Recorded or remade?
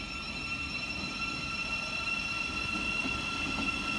recorded